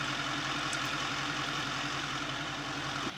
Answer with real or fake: fake